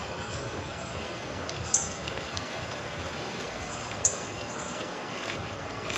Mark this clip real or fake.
fake